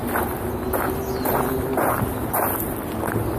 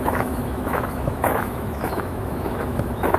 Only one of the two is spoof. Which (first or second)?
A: second